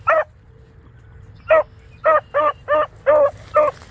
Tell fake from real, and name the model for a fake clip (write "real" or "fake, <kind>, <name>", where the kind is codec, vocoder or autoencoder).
real